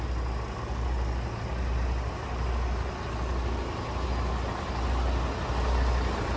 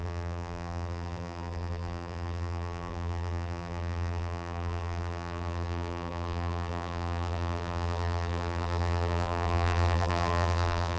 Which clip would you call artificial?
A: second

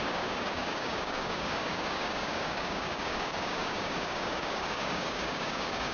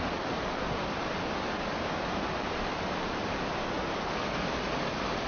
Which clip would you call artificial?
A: first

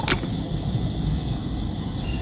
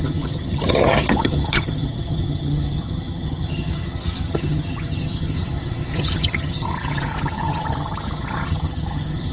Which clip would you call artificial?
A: second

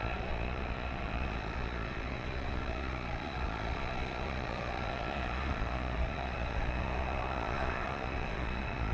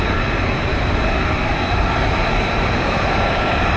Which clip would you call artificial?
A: first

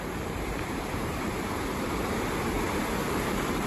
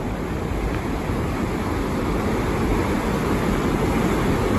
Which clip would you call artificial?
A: first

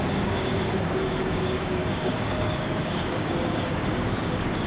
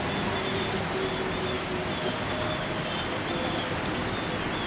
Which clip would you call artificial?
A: first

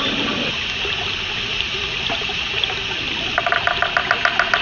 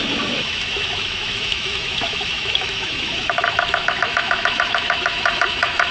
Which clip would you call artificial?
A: second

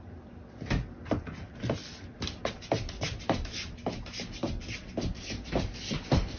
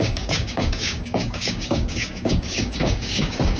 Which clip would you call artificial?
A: second